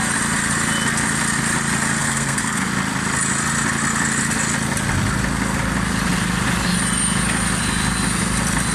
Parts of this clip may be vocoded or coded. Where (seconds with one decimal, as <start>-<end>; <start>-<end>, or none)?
2.0-2.7